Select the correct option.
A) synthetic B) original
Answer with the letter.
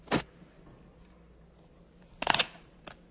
B